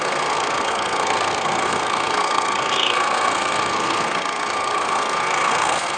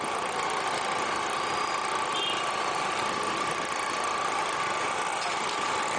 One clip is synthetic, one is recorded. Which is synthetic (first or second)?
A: first